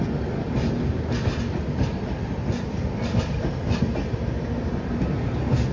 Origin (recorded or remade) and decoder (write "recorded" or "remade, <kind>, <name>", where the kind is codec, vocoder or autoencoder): recorded